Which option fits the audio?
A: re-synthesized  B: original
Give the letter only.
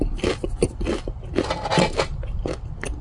B